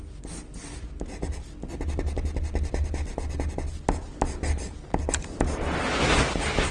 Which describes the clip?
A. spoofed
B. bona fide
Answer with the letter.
B